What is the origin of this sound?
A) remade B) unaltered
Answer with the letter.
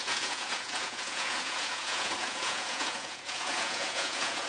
A